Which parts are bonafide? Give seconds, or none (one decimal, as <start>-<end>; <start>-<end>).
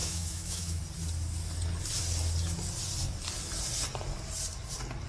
0.8-5.1